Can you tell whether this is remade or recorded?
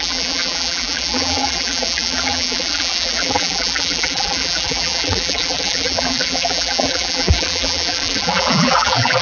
remade